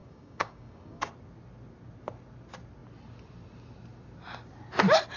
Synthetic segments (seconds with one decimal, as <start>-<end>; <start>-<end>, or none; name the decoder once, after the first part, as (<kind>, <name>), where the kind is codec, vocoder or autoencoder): 0.0-1.0 (codec, DAC)